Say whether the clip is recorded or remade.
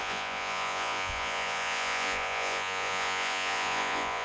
remade